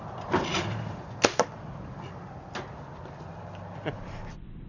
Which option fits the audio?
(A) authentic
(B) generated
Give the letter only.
A